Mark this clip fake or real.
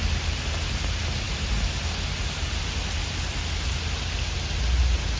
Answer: real